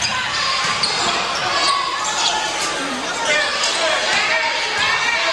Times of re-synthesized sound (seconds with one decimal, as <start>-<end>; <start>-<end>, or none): none

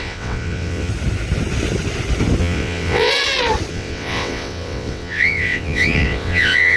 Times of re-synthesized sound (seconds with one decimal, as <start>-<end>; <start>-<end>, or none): 0.0-0.9; 2.4-3.1; 3.7-6.8